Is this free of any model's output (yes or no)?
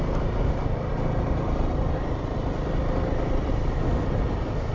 yes